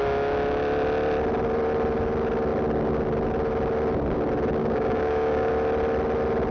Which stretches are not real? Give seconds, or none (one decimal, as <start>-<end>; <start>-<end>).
4.6-5.5